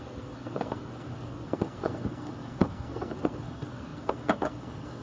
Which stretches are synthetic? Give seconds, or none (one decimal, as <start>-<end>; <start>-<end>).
0.0-5.0